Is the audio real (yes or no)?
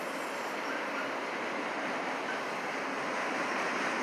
yes